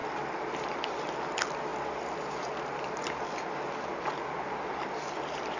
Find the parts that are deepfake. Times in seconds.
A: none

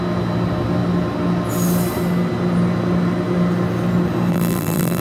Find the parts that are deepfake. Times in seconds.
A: 4.3-5.0 (vocoder, BigVGAN v2)

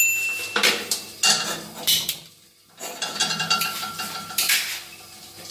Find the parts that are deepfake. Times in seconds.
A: 3.2-3.9 (vocoder, BigVGAN v2)

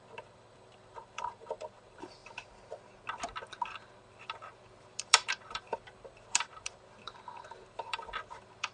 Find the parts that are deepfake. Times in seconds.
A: 0.0-2.2 (vocoder, BigVGAN v2); 3.8-8.7

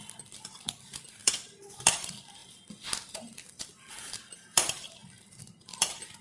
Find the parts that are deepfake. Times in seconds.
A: 0.0-6.2 (vocoder, BigVGAN v2)

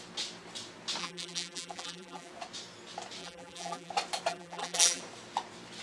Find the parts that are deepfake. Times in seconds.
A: 1.0-2.3 (vocoder, BigVGAN v2); 3.2-3.9; 4.3-5.0

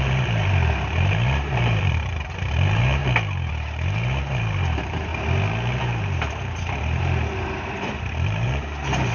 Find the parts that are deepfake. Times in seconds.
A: 0.0-3.0 (vocoder, BigVGAN v2); 3.5-5.1; 5.8-9.1